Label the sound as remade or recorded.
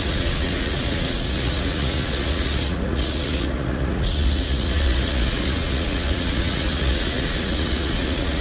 remade